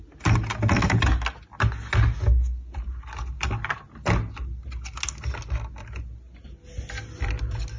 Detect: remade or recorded recorded